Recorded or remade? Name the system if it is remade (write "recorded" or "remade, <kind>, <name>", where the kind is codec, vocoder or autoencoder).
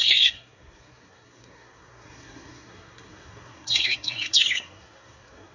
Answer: remade, codec, SNAC